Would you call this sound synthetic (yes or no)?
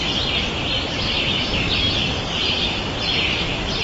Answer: no